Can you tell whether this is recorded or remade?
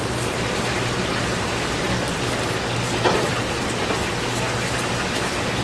recorded